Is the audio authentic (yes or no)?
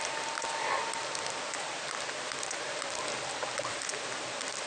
yes